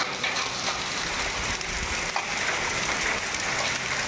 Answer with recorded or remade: recorded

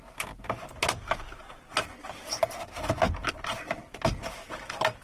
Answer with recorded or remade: recorded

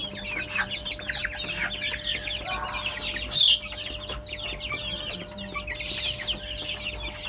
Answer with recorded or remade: recorded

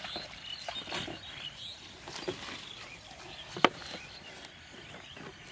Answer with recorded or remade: recorded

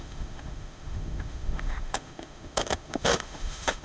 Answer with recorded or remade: remade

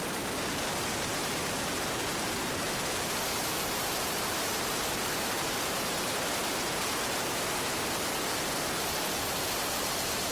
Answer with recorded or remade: remade